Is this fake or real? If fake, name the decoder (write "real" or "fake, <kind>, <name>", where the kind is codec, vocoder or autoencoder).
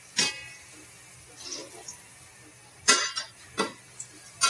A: fake, vocoder, BigVGAN v2